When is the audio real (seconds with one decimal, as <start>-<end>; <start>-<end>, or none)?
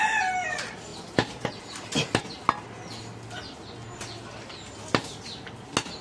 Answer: 0.0-6.0